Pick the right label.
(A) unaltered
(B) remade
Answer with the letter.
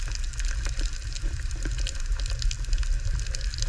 A